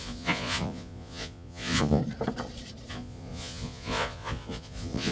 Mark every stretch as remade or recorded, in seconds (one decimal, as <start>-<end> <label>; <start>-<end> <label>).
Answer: 0.0-2.0 remade; 2.0-2.9 recorded; 2.9-5.1 remade